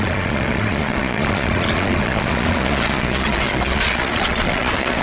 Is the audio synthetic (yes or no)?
yes